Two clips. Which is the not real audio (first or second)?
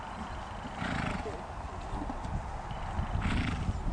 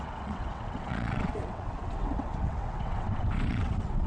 second